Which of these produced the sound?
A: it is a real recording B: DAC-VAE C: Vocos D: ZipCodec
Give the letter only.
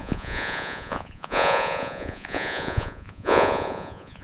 C